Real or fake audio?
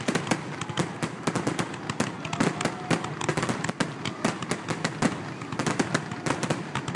real